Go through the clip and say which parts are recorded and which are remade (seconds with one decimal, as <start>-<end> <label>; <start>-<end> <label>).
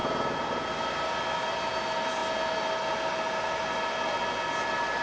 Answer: 0.0-1.7 remade; 1.7-5.0 recorded